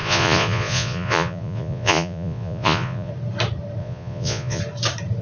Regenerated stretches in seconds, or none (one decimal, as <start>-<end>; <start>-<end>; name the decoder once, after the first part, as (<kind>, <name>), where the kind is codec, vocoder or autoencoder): 0.0-3.1 (vocoder, Vocos); 3.8-4.6